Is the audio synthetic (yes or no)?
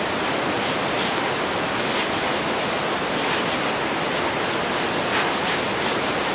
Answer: no